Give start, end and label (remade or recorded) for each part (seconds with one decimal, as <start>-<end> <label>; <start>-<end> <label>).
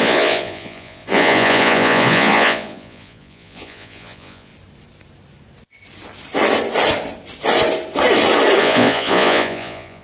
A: 0.0-4.5 remade; 4.5-8.6 recorded; 8.6-10.0 remade